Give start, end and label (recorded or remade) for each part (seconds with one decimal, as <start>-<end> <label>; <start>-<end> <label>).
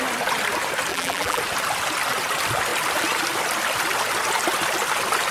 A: 0.0-0.9 recorded; 0.9-1.4 remade; 1.4-5.3 recorded